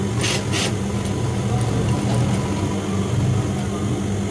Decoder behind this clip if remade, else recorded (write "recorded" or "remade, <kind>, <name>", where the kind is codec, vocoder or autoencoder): recorded